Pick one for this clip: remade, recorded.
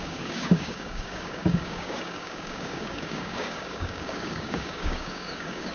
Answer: remade